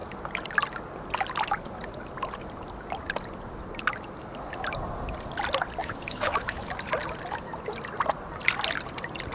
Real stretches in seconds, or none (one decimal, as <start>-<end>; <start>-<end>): 0.0-5.8; 6.7-9.3